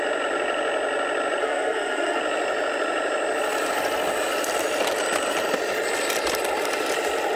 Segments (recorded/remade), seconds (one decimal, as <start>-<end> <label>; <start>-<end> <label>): 0.0-1.4 recorded; 1.4-2.2 remade; 2.2-7.4 recorded